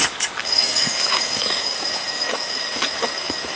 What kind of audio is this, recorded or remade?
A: remade